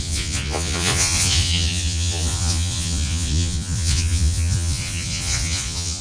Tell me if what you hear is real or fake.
fake